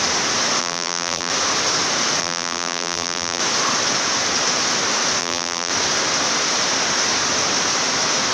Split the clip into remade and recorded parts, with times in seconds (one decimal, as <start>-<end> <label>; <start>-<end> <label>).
0.0-0.6 recorded; 0.6-1.3 remade; 1.3-2.2 recorded; 2.2-3.4 remade; 3.4-5.2 recorded; 5.2-5.7 remade; 5.7-8.3 recorded